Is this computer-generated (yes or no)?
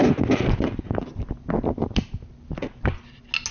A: no